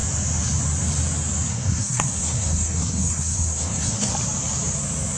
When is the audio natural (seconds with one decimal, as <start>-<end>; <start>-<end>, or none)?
0.0-1.5; 4.1-5.2